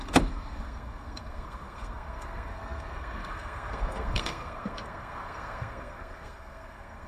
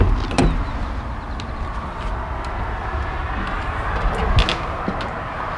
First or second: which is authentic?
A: second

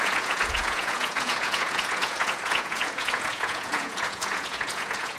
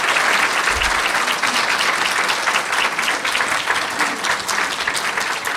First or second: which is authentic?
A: second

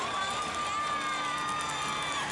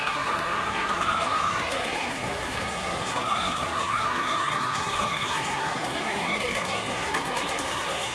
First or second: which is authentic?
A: first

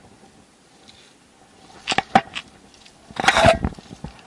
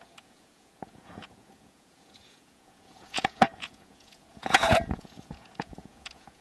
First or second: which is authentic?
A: first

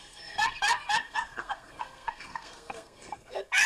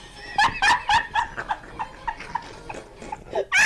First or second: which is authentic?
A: second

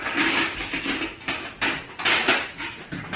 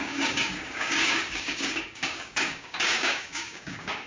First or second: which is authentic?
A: first